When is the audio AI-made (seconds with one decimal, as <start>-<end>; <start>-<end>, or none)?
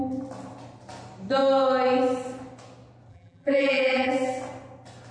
3.1-4.1